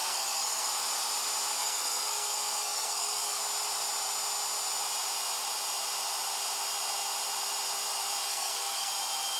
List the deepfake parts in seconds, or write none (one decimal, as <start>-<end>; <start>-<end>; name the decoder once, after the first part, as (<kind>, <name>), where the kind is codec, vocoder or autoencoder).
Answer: 0.0-0.7 (codec, SNAC); 1.6-3.4; 8.3-8.9